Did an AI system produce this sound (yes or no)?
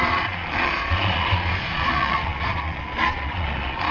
yes